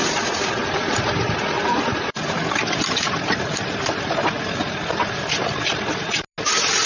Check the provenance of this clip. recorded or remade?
recorded